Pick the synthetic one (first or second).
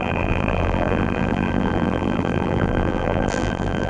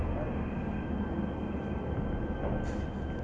first